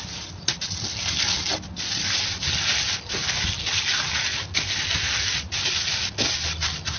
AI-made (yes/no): no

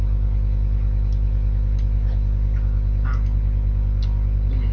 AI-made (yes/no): no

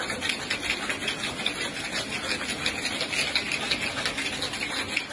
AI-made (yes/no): no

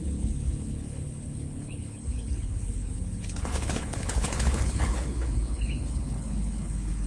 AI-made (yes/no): yes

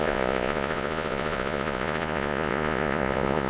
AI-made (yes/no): yes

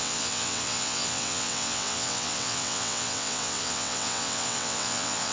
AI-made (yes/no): yes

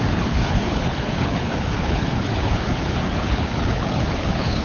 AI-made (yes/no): yes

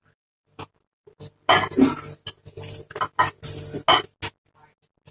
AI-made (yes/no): no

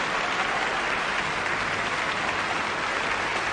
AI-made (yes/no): no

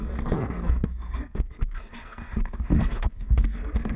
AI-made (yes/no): yes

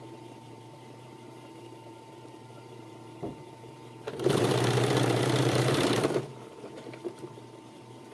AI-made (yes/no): yes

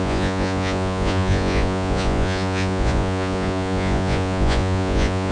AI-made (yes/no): yes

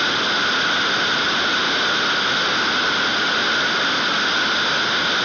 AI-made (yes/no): no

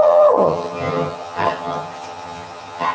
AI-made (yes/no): yes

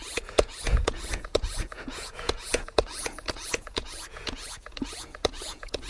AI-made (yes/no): yes